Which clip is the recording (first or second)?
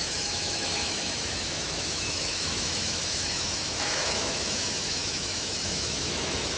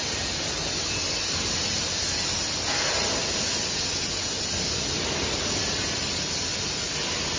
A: second